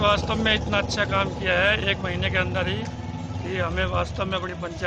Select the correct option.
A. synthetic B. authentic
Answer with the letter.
B